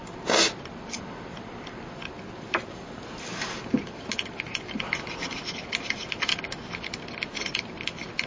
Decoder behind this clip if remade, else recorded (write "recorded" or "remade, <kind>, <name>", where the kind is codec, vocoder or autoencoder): recorded